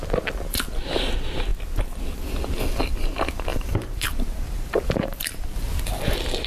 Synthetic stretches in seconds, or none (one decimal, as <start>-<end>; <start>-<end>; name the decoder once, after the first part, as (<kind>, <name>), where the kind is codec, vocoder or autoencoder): 3.5-5.9 (vocoder, BigVGAN v2)